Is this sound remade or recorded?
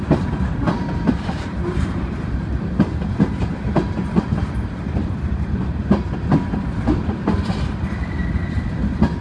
remade